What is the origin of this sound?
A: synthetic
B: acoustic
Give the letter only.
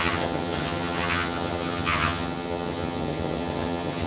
A